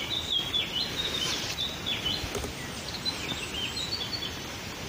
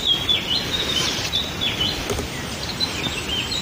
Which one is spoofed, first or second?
second